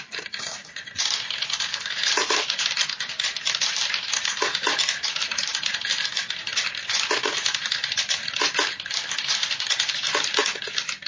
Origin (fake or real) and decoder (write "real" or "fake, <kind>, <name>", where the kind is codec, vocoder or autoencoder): real